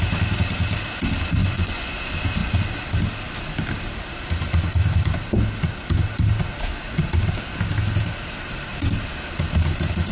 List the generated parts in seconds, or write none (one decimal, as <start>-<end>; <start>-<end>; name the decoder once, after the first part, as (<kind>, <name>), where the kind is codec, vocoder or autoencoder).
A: 1.4-1.9 (vocoder, Vocos)